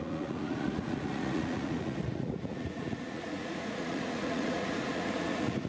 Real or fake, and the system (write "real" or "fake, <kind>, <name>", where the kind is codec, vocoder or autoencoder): fake, vocoder, Vocos